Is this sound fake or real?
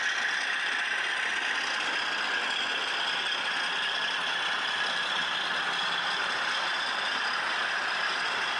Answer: real